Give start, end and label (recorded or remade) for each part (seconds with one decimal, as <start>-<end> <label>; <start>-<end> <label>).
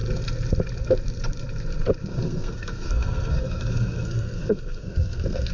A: 0.0-2.1 recorded; 2.1-5.5 remade